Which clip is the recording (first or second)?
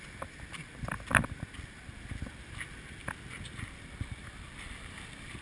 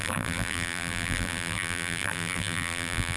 first